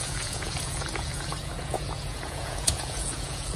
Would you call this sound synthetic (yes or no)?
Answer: yes